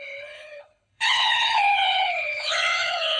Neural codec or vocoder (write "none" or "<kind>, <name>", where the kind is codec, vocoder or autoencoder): codec, HILCodec